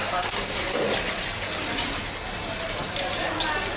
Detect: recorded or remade recorded